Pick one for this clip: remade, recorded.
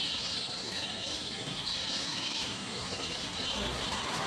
remade